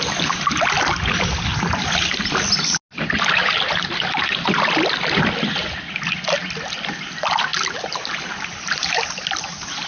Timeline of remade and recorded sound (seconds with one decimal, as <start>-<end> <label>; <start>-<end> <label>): 0.0-9.9 recorded